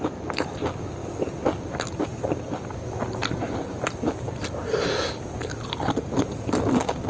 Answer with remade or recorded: recorded